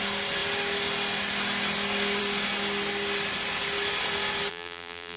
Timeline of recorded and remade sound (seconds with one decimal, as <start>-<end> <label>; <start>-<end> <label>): 0.0-4.5 recorded; 4.5-5.2 remade

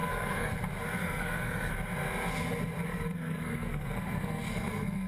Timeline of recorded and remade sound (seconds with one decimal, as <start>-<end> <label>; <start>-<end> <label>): 0.0-0.5 remade; 0.5-1.0 recorded; 1.0-1.7 remade; 1.7-2.9 recorded; 2.9-5.1 remade

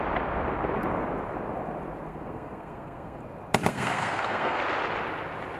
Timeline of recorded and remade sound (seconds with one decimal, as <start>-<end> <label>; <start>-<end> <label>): 0.0-2.1 recorded; 2.1-3.2 remade; 3.2-3.7 recorded; 3.7-4.6 remade; 4.6-5.6 recorded